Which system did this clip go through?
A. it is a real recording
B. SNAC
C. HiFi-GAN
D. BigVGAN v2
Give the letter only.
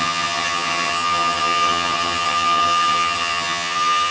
C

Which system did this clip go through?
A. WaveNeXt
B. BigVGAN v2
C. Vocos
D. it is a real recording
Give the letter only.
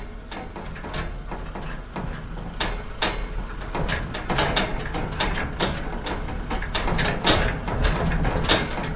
D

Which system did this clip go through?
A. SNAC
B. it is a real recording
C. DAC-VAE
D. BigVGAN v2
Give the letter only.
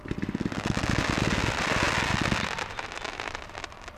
B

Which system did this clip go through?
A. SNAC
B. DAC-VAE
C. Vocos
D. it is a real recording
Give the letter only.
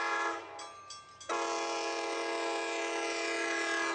D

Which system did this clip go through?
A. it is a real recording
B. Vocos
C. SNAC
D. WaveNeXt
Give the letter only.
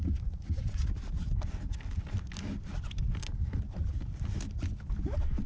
A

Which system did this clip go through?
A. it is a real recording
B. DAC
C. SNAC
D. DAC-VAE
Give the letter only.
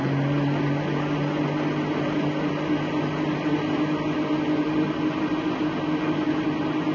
A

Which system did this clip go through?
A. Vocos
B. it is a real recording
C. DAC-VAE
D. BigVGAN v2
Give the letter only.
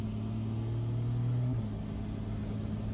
B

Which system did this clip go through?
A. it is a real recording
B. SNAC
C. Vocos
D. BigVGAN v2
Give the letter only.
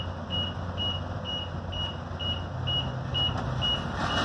A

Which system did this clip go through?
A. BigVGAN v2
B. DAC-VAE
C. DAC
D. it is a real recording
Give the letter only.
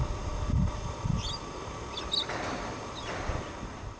D